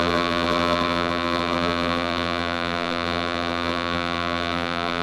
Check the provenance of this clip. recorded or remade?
remade